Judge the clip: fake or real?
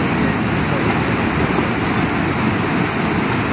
real